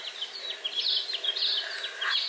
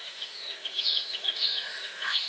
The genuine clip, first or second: first